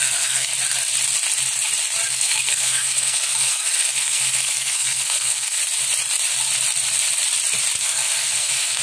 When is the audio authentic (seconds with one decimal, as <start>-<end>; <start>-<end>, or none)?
0.5-2.1; 5.6-7.8